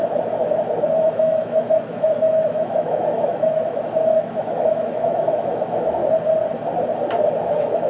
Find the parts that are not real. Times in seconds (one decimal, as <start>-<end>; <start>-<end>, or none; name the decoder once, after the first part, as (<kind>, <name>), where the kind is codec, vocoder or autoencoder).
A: 0.8-6.0 (autoencoder, DAC-VAE); 7.4-7.9